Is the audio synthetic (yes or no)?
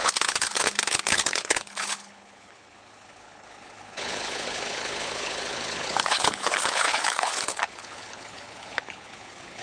yes